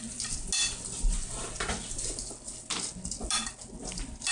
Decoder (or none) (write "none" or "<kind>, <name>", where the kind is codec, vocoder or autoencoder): none